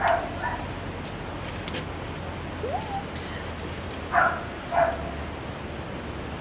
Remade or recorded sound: recorded